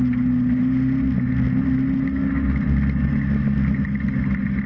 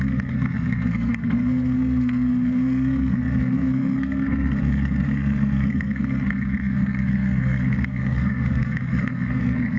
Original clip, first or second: first